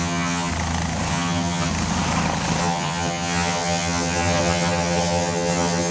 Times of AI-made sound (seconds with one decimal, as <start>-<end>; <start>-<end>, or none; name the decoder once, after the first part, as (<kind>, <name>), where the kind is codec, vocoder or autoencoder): 0.0-0.5 (vocoder, HiFi-GAN); 1.1-1.7; 2.6-5.9